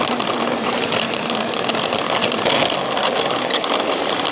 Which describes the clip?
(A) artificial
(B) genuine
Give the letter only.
B